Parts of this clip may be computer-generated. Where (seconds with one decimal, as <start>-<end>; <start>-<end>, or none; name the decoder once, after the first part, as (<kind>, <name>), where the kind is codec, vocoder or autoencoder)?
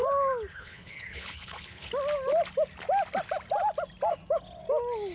0.5-1.9 (codec, HILCodec)